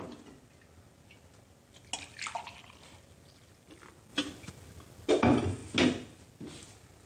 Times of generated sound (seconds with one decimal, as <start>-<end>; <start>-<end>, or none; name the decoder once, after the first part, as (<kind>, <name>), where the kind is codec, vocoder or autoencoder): none